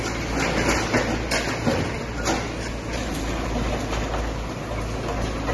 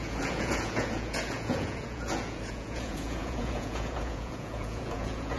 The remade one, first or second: second